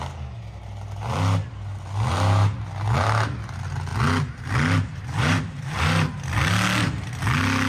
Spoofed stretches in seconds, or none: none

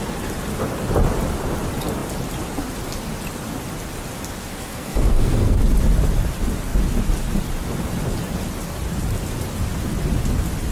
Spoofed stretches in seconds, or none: 4.5-5.6 (codec, SNAC)

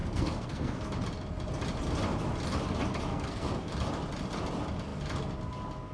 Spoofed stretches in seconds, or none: 0.0-0.9 (codec, SNAC); 3.1-3.7

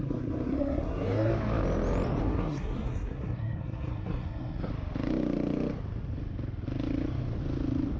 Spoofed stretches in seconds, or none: 0.0-1.3 (codec, SNAC); 2.2-4.7

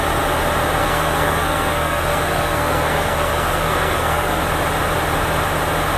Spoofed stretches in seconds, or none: 0.8-4.4 (codec, SNAC)